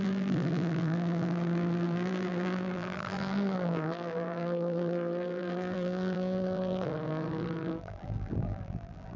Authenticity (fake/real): fake